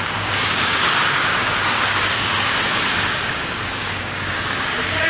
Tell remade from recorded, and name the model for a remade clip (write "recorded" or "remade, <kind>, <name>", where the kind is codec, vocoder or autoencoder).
remade, codec, DAC